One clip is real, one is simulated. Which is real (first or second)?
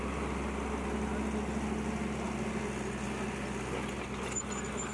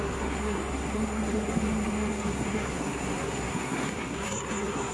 first